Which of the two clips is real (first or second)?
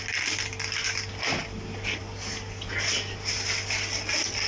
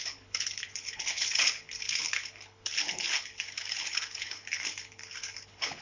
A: first